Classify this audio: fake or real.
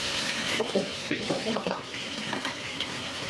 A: fake